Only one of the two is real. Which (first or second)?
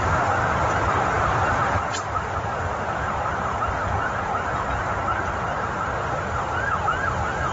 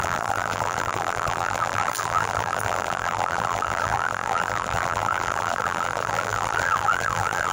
first